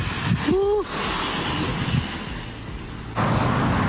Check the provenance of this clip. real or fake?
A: real